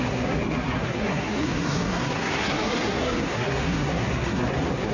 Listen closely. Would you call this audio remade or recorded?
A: remade